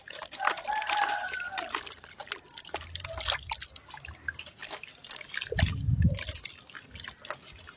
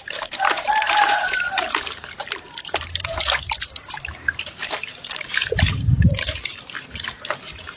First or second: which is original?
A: first